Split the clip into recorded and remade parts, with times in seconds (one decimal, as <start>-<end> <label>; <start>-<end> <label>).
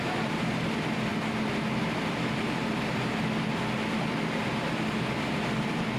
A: 0.0-6.0 recorded